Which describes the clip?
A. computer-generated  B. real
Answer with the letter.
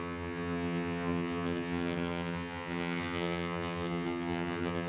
A